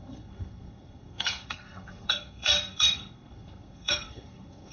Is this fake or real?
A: fake